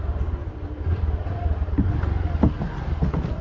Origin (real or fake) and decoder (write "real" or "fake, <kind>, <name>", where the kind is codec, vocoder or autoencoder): real